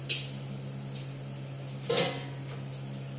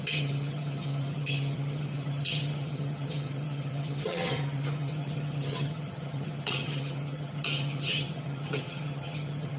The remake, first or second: second